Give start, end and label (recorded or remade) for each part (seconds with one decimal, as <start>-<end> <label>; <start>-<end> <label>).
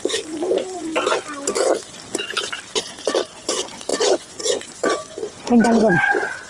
0.0-0.9 remade; 0.9-2.8 recorded; 2.8-6.5 remade